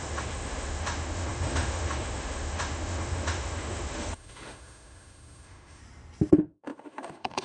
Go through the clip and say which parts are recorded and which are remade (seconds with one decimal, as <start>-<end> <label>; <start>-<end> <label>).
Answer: 0.0-5.8 remade; 5.8-6.3 recorded; 6.3-7.4 remade